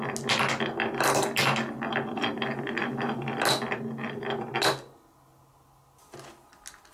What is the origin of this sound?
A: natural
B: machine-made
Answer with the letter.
A